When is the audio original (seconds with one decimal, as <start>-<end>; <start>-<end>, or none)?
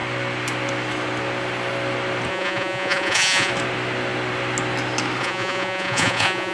0.0-2.3; 3.5-5.2